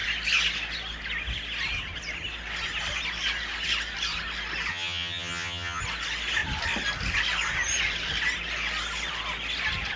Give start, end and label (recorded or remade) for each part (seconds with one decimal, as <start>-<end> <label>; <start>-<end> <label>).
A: 0.0-4.7 recorded; 4.7-5.8 remade; 5.8-10.0 recorded